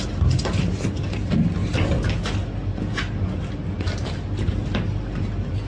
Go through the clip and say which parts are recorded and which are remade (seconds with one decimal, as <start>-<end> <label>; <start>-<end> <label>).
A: 0.0-5.7 recorded